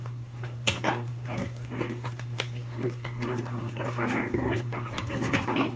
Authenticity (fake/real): fake